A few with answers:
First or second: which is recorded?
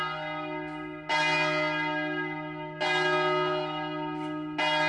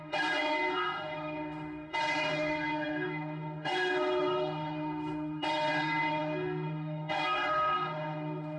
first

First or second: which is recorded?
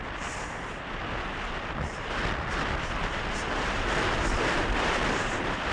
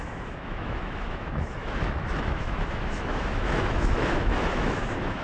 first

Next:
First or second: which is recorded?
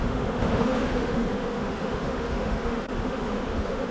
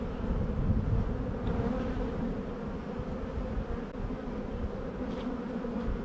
second